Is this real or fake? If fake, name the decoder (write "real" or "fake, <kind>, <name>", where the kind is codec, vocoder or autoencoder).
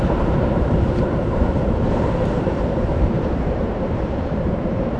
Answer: fake, vocoder, BigVGAN v2